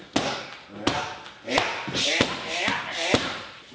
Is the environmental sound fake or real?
real